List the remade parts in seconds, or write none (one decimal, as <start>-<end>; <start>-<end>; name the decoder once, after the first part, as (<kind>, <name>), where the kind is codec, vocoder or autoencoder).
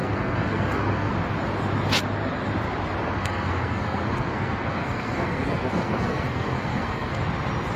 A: 0.0-1.1 (codec, SNAC); 3.0-7.2